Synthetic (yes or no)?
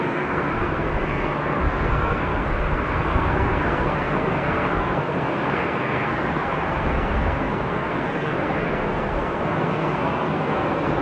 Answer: yes